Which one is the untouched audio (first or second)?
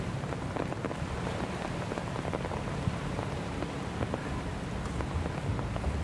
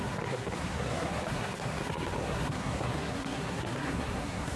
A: first